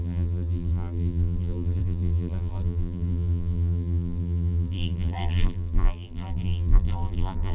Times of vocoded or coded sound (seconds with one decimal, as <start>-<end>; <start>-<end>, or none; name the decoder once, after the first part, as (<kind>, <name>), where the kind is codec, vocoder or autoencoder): 0.0-7.5 (vocoder, BigVGAN v2)